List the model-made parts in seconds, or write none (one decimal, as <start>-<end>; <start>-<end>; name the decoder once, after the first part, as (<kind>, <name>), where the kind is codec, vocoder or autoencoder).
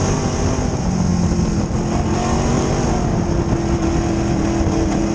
none